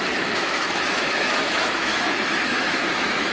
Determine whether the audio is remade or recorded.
remade